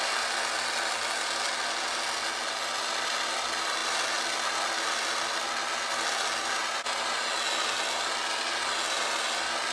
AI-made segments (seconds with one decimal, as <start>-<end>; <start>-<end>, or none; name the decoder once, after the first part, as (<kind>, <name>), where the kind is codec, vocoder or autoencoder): none